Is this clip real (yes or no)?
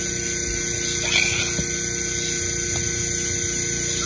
yes